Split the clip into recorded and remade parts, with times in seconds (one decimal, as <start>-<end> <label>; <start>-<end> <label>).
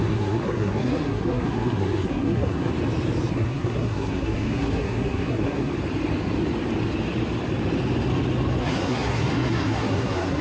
0.0-2.7 remade; 2.7-3.3 recorded; 3.3-5.7 remade; 5.7-8.6 recorded; 8.6-10.4 remade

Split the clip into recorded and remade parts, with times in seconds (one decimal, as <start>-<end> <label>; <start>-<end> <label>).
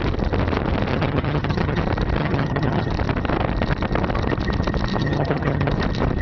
0.0-0.9 recorded; 0.9-1.8 remade; 1.8-2.2 recorded; 2.2-2.9 remade; 2.9-5.0 recorded; 5.0-5.7 remade; 5.7-6.2 recorded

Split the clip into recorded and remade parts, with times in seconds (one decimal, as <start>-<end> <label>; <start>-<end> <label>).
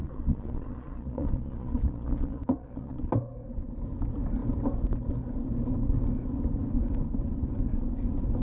0.0-3.1 remade; 3.1-8.4 recorded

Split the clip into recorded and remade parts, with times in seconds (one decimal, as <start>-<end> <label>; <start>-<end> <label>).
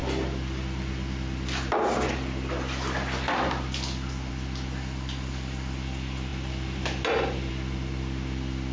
0.0-8.7 recorded